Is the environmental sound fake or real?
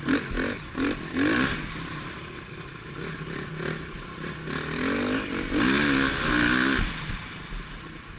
real